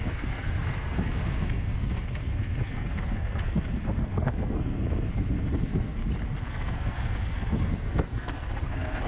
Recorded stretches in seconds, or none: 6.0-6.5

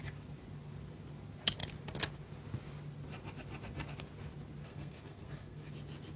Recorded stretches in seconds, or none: 0.0-4.6; 5.7-6.2

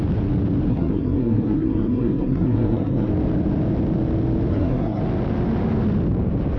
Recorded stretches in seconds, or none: 0.0-0.7; 3.1-4.5; 5.0-6.6

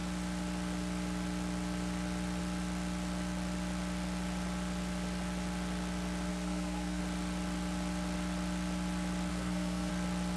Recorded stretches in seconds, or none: 0.0-6.3; 7.0-9.3; 9.9-10.4

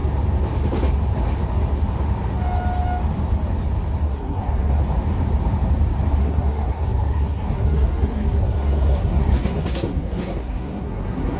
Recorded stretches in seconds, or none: 0.0-4.0; 4.8-6.2

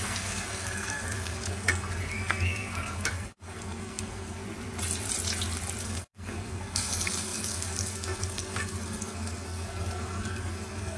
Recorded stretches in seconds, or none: 4.4-5.8

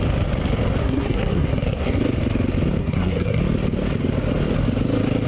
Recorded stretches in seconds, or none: 0.0-0.8; 2.0-2.8; 3.4-5.3